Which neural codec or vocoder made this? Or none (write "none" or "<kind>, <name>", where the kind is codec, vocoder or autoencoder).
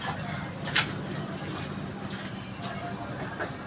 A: none